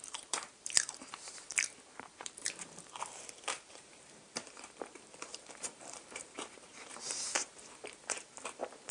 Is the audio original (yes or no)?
no